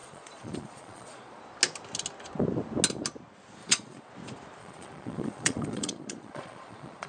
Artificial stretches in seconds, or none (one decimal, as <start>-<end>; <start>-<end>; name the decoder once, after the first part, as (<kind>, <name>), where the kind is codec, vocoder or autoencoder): 0.0-1.4 (vocoder, Vocos); 3.6-4.1; 4.6-7.1